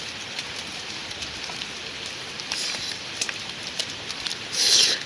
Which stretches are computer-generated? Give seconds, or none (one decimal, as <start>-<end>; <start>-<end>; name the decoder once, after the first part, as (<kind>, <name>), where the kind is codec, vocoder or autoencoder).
0.7-3.8 (vocoder, BigVGAN v2)